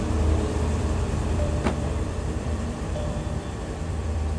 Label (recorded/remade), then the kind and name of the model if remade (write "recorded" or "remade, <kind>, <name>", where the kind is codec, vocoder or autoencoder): remade, vocoder, BigVGAN v2